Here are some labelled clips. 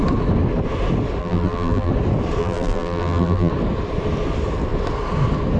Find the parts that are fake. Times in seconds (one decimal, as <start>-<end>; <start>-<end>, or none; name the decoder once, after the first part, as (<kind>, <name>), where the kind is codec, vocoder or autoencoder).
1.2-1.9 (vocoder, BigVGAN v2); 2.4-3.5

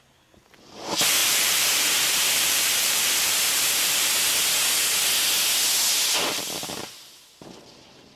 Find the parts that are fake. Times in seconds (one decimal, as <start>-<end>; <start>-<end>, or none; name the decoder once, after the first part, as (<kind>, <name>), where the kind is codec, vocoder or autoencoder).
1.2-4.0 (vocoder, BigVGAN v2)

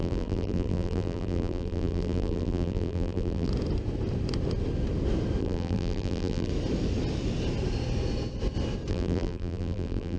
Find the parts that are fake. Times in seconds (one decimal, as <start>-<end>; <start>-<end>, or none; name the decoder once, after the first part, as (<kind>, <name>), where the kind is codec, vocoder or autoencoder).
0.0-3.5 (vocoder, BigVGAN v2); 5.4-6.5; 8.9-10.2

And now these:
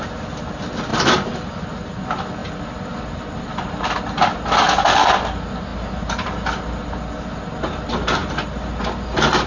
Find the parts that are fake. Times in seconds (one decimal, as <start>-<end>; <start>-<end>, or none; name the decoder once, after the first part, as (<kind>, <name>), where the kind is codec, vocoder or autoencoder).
0.9-1.6 (vocoder, BigVGAN v2); 2.4-3.6; 5.7-7.4; 8.2-9.5

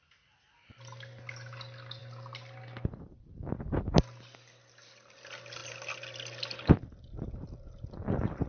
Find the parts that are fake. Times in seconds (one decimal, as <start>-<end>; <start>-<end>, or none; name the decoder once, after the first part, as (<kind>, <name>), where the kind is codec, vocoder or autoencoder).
none